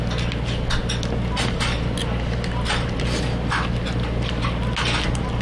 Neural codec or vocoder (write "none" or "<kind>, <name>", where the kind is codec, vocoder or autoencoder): none